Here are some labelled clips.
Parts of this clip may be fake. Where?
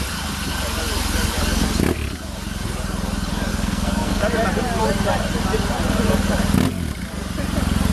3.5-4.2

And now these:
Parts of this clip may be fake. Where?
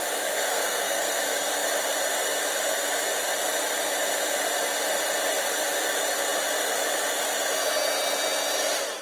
0.5-1.2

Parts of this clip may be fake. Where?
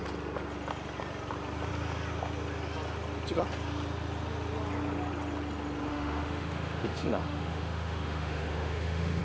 5.9-9.2